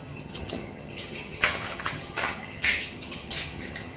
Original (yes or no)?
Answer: no